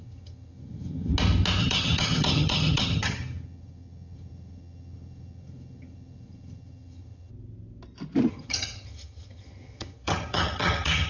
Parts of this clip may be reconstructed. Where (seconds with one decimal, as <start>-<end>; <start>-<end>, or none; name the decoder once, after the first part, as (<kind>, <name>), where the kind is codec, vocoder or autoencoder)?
0.0-1.1 (vocoder, HiFi-GAN); 1.6-7.3; 8.3-11.1